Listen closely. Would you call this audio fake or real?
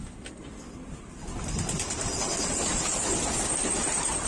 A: real